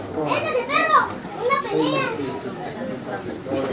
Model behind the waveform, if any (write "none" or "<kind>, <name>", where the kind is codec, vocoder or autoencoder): none